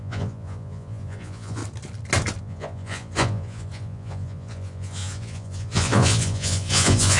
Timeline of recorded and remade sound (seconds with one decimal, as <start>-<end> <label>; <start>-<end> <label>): 0.0-1.6 remade; 1.6-2.4 recorded; 2.4-7.2 remade